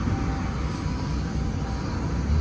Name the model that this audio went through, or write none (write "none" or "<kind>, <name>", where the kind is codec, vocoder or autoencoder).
none